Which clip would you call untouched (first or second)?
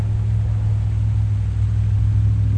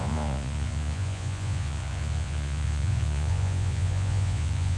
first